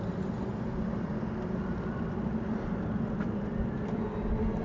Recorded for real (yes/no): yes